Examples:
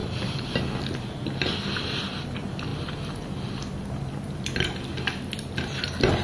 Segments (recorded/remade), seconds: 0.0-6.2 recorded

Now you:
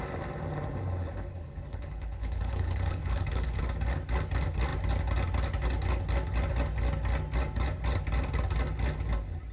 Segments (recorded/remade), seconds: 0.0-1.0 recorded; 1.0-3.6 remade; 3.6-9.5 recorded

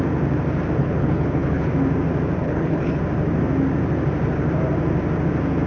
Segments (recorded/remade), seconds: 0.0-0.8 recorded; 0.8-1.7 remade; 1.7-2.4 recorded; 2.4-3.0 remade; 3.0-5.7 recorded

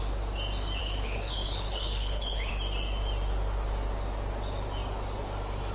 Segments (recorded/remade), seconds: 0.0-0.8 recorded; 0.8-2.5 remade; 2.5-5.7 recorded